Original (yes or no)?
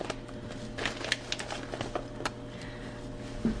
yes